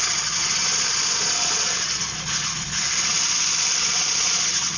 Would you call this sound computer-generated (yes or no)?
yes